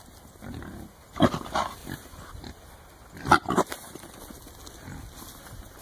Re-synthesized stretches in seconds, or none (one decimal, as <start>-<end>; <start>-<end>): none